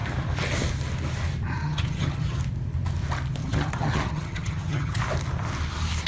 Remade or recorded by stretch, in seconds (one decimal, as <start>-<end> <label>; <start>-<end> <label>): 0.0-1.6 recorded; 1.6-2.4 remade; 2.4-3.4 recorded; 3.4-5.0 remade; 5.0-6.1 recorded